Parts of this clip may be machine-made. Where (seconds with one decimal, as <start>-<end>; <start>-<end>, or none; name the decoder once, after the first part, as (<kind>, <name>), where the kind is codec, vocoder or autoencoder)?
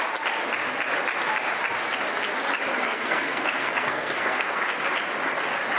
2.7-4.8 (codec, SNAC)